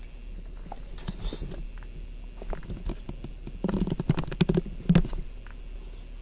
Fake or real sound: real